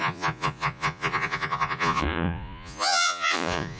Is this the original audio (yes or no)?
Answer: no